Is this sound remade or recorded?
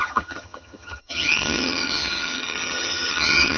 remade